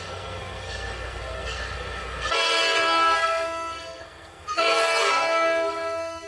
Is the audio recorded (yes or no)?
no